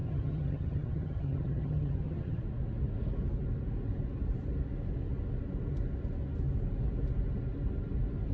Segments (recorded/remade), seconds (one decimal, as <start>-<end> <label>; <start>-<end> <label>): 0.0-2.4 remade; 2.4-8.3 recorded